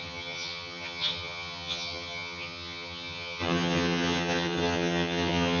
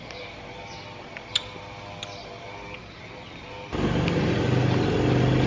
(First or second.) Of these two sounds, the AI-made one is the first